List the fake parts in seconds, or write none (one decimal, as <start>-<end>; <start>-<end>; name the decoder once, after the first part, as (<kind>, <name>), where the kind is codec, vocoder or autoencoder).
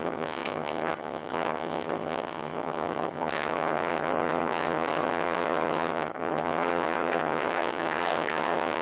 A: 0.0-8.8 (vocoder, HiFi-GAN)